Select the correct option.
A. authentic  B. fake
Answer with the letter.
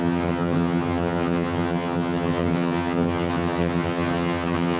B